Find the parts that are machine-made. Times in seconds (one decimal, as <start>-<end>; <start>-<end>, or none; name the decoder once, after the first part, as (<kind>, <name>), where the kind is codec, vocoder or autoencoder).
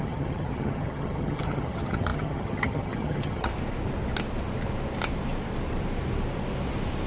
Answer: 0.0-3.5 (vocoder, HiFi-GAN)